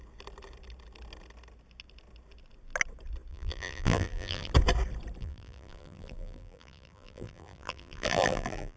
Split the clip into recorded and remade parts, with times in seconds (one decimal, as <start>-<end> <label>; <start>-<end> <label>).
0.0-3.3 recorded; 3.3-4.5 remade; 4.5-5.2 recorded; 5.2-8.8 remade